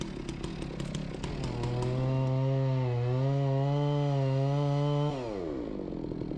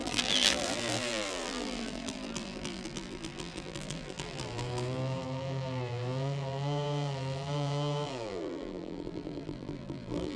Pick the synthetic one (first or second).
second